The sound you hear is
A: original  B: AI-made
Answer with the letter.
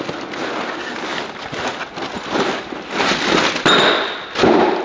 A